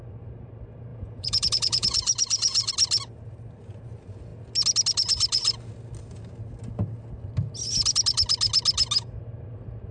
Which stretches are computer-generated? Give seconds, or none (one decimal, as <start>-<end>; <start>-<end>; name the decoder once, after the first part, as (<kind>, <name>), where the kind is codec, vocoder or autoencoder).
0.9-2.7 (vocoder, Vocos)